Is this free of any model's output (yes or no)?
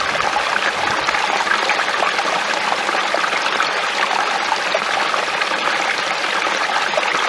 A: yes